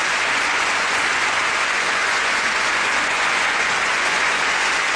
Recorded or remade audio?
remade